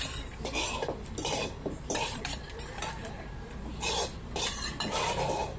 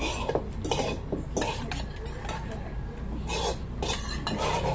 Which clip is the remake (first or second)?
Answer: first